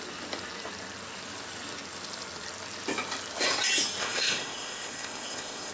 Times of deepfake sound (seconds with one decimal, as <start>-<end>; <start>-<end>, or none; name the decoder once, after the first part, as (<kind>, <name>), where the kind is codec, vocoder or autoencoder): 4.0-5.7 (codec, ZipCodec)